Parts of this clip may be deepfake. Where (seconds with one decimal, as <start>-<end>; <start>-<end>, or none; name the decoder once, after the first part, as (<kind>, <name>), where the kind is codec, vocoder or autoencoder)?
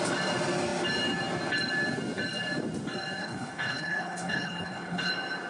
3.2-5.1 (codec, HILCodec)